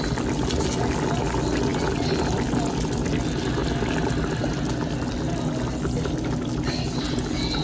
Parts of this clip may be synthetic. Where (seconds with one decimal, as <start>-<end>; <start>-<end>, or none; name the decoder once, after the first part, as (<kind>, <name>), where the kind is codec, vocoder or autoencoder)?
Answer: none